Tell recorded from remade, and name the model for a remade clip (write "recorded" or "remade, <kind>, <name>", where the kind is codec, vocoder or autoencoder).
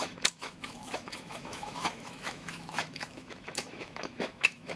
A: remade, autoencoder, DAC-VAE